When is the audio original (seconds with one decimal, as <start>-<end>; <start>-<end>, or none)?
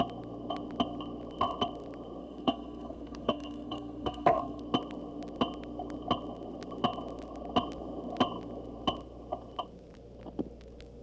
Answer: 0.0-2.2; 4.6-11.0